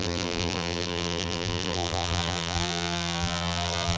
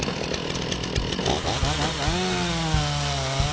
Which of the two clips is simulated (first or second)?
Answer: first